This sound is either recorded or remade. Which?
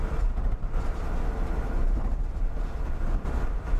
remade